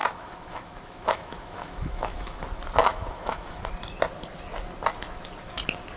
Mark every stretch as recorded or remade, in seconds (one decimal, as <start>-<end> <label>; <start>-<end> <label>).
0.0-2.4 remade; 2.4-2.8 recorded; 2.8-3.6 remade; 3.6-6.0 recorded